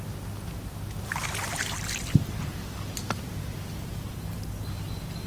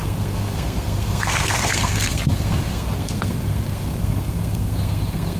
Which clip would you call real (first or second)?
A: first